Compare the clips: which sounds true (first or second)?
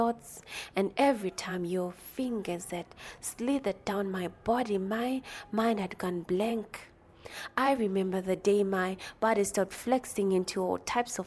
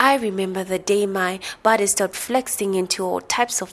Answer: second